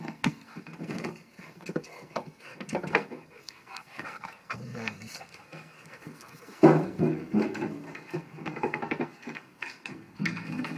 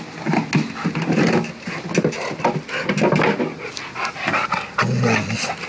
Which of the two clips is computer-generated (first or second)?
first